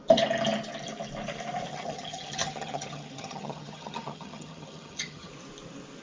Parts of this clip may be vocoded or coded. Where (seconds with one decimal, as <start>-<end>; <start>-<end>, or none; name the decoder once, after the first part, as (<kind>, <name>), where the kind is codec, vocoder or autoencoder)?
1.7-5.3 (vocoder, HiFi-GAN)